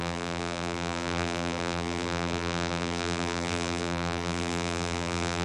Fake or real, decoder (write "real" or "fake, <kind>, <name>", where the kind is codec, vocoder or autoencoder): fake, vocoder, BigVGAN v2